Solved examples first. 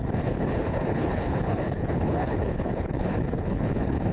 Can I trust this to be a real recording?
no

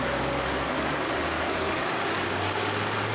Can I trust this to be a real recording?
no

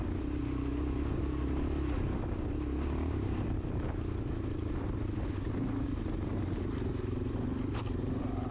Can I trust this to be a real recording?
yes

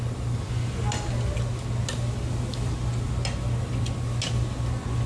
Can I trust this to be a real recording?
yes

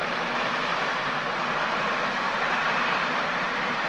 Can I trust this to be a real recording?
no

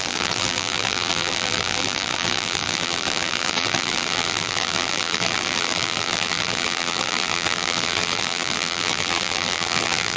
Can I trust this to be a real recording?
no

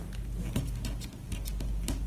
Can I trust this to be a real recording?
yes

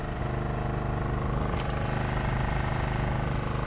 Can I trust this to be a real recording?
yes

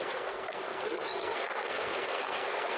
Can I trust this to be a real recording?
no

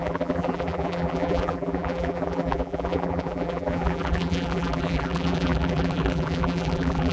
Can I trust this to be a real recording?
no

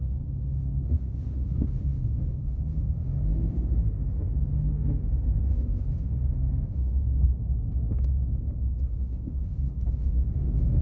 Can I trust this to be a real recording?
no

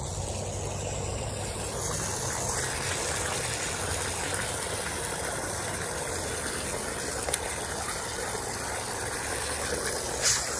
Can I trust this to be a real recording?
yes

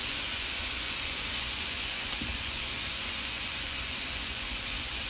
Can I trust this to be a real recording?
no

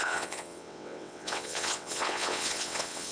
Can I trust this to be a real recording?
no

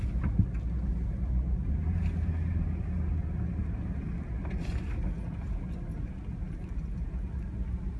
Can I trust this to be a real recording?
yes